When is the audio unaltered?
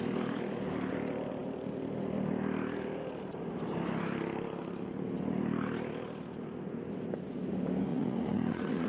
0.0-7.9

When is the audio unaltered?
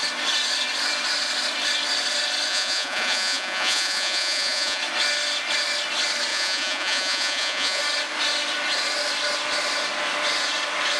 0.0-2.5; 4.8-6.3; 7.8-11.0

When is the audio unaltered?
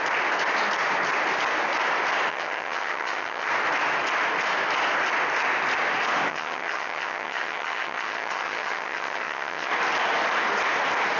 0.0-2.3; 3.5-6.3; 9.7-11.2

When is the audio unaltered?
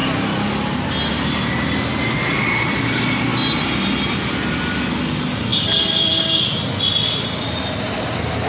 0.0-5.5; 6.2-8.5